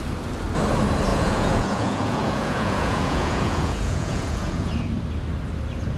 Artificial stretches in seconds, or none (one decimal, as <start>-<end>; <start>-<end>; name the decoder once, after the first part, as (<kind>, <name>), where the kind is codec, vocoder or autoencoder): 1.1-4.7 (vocoder, Vocos)